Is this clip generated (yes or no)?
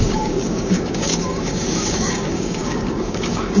yes